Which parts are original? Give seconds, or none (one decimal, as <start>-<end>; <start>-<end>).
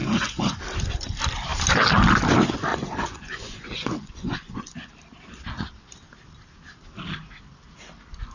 0.6-2.7; 4.9-8.3